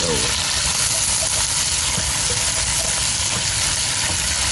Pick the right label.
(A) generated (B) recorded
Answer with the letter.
B